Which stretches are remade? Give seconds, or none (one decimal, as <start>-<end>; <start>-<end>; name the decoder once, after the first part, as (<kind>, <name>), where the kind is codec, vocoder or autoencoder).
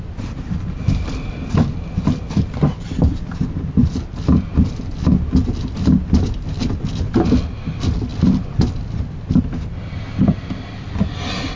none